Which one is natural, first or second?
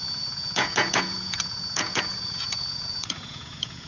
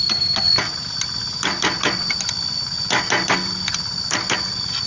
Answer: second